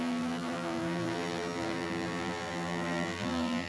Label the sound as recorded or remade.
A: remade